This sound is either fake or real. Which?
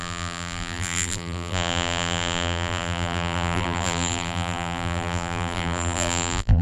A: fake